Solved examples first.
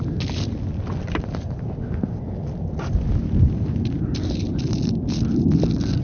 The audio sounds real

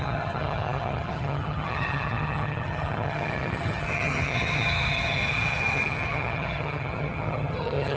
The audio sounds fake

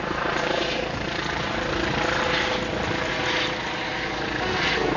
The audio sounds real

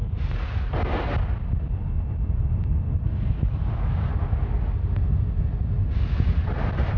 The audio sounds real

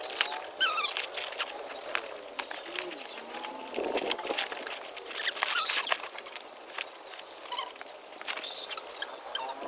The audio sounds real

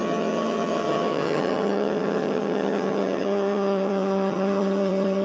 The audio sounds fake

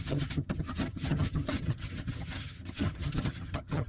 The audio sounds fake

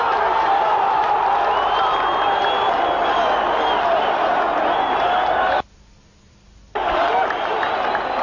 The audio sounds real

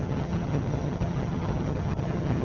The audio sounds fake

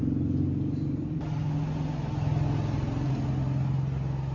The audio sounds real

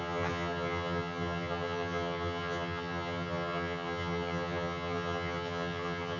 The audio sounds fake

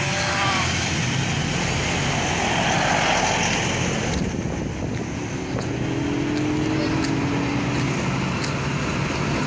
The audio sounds real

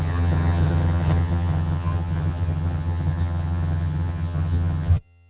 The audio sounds fake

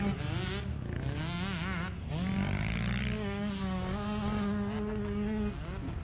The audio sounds real